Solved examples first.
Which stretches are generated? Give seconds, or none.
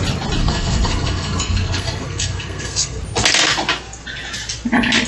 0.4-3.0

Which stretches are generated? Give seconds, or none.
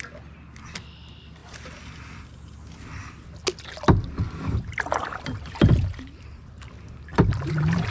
4.7-6.6; 7.1-7.9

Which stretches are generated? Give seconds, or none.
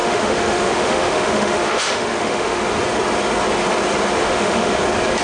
0.0-2.6; 4.2-4.8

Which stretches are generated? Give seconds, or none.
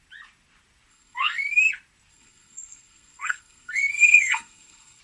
0.9-1.7; 2.1-5.0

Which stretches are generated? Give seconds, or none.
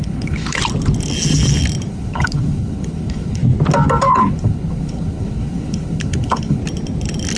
0.0-0.6; 1.9-3.4; 4.1-6.6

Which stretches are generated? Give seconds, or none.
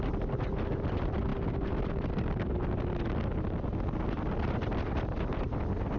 none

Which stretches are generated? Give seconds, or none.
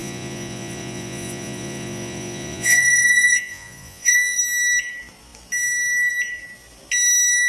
0.0-4.4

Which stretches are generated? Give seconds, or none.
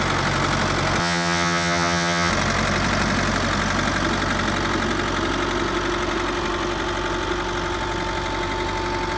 1.0-2.3